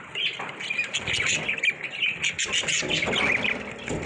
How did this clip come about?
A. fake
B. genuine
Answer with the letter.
B